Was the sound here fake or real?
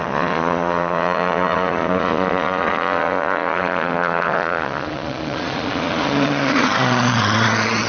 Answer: fake